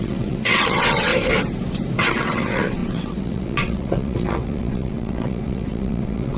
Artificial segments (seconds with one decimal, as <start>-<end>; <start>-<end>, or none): 0.0-1.1; 2.0-6.4